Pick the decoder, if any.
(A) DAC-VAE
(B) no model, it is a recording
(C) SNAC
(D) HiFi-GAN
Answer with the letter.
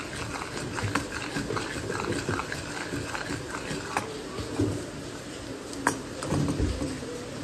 B